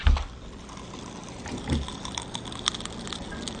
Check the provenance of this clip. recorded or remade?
recorded